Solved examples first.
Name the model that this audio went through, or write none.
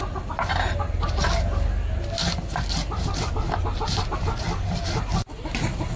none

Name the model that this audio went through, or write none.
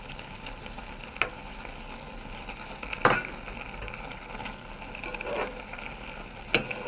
none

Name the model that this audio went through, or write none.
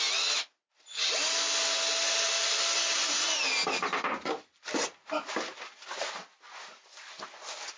none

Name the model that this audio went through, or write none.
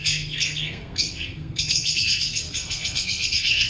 codec, SNAC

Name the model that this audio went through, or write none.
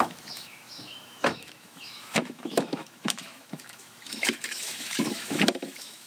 autoencoder, DAC-VAE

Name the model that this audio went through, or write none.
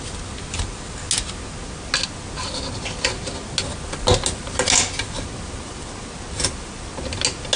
none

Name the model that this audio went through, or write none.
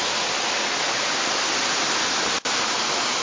none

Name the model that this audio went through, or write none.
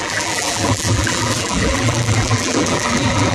vocoder, BigVGAN v2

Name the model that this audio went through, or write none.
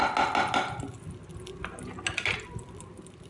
none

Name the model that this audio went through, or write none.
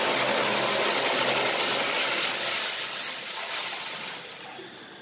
none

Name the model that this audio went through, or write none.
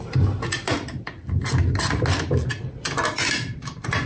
none